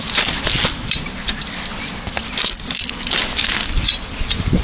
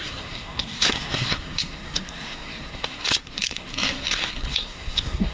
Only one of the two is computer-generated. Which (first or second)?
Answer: second